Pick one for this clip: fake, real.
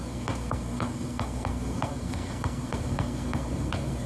fake